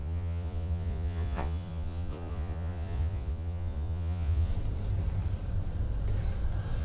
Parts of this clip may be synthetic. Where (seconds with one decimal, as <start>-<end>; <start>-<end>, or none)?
0.0-4.5